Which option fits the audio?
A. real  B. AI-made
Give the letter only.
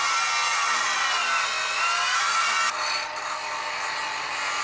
A